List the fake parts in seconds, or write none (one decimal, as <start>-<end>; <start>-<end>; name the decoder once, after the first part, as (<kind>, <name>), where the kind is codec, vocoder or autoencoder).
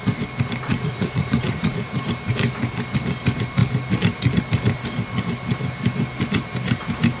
0.7-1.9 (vocoder, Vocos)